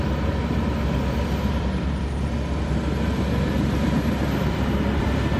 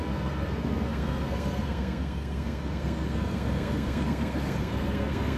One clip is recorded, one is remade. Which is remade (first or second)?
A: second